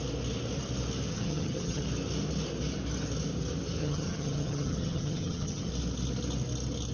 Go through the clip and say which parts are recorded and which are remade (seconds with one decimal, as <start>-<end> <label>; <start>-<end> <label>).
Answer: 0.0-1.1 recorded; 1.1-1.8 remade; 1.8-3.8 recorded; 3.8-5.7 remade; 5.7-6.9 recorded